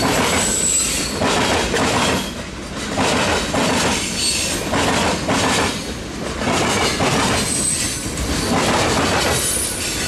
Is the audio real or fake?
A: real